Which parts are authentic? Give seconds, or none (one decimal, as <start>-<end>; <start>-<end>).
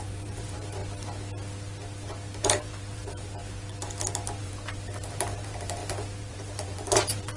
0.8-2.4; 3.4-4.4